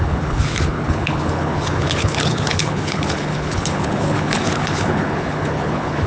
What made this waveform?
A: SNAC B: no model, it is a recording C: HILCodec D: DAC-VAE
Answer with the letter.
C